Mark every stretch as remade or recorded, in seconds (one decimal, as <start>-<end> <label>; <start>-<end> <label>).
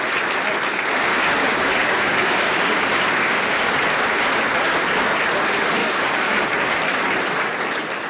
0.0-1.1 recorded; 1.1-3.7 remade; 3.7-5.8 recorded; 5.8-6.8 remade; 6.8-8.1 recorded